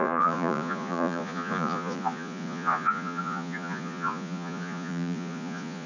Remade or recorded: remade